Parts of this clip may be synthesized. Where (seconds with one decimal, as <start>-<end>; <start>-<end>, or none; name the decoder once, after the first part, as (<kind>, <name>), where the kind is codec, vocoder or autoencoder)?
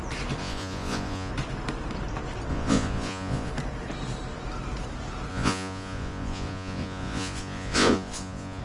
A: 0.4-1.3 (vocoder, Vocos); 2.5-3.5; 5.3-8.6